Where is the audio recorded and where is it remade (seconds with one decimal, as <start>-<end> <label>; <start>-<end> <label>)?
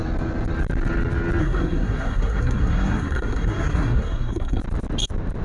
0.0-1.4 recorded; 1.4-4.6 remade; 4.6-5.4 recorded